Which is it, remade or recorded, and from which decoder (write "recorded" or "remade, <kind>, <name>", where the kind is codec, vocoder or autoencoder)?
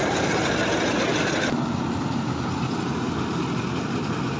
recorded